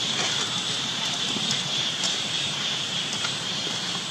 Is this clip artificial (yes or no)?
yes